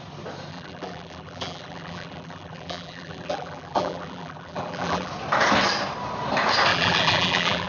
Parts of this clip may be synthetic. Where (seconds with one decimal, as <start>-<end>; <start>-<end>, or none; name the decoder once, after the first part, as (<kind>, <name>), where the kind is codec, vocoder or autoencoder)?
0.5-5.1 (vocoder, BigVGAN v2); 6.7-7.7